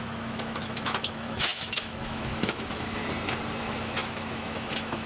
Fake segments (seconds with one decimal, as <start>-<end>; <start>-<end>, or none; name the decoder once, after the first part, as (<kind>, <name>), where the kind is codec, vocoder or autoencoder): 0.0-3.0 (autoencoder, DAC-VAE); 3.6-5.1